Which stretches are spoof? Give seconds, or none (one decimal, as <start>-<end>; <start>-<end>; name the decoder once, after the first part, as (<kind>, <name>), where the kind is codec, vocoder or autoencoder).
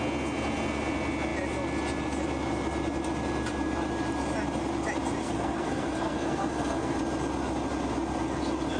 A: 5.2-7.0 (codec, SNAC)